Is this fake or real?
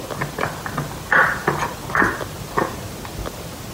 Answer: real